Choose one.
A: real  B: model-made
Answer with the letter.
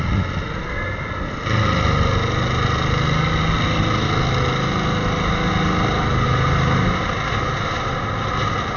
A